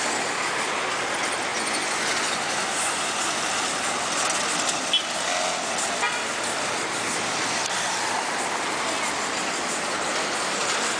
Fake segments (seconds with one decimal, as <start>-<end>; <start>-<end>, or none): 1.5-3.4